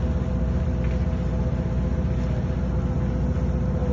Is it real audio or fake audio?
real